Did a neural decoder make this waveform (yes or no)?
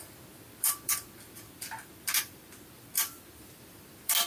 yes